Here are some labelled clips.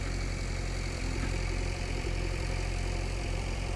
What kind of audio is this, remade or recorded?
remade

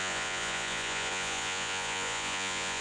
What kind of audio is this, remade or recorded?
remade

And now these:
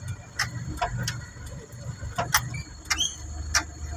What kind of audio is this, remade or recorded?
recorded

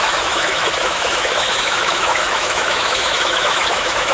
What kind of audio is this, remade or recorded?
remade